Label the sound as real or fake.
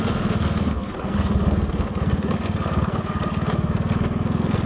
fake